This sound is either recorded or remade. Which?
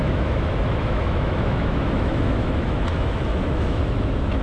remade